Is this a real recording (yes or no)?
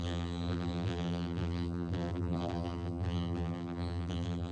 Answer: no